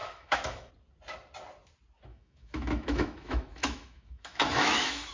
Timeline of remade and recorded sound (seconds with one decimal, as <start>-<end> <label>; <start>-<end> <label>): 0.0-0.7 remade; 0.7-2.1 recorded; 2.1-5.1 remade